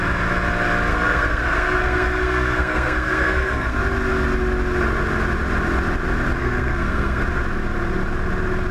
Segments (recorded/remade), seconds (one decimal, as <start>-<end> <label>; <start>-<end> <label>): 0.0-0.9 recorded; 0.9-3.8 remade; 3.8-6.4 recorded; 6.4-7.2 remade; 7.2-8.7 recorded